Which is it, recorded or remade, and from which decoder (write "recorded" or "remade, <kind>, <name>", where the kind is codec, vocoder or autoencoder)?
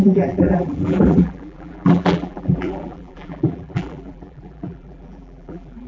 remade, vocoder, BigVGAN v2